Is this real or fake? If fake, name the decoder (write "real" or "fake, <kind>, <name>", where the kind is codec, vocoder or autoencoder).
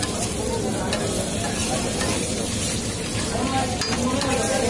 real